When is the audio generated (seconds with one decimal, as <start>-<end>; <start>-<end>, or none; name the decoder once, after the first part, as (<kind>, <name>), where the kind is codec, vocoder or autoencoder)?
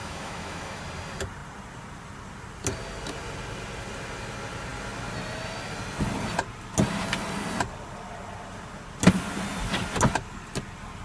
0.0-0.8 (autoencoder, DAC-VAE)